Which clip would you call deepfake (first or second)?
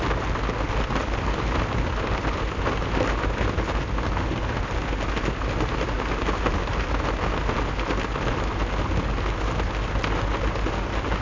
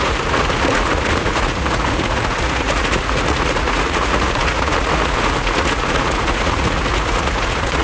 second